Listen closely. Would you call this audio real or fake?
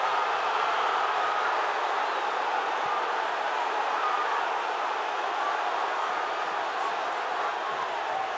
real